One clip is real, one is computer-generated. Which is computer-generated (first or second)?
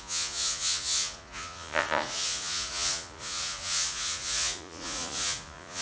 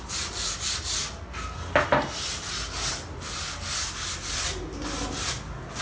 first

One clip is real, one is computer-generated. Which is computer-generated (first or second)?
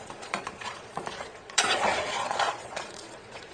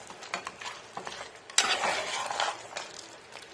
first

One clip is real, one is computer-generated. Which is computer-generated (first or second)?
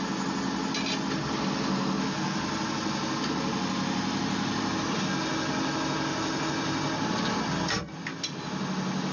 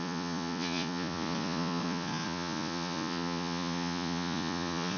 second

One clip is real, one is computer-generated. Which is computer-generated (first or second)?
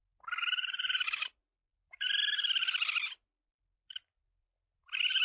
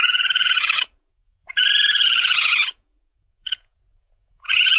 second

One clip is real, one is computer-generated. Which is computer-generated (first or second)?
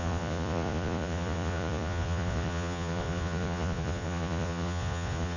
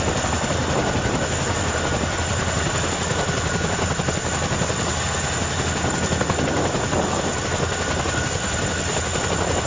first